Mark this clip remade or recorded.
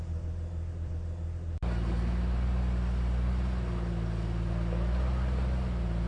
recorded